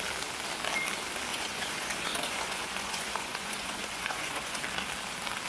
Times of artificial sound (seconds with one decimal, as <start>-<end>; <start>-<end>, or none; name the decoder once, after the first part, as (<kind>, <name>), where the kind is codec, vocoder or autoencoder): 1.3-4.6 (vocoder, Vocos)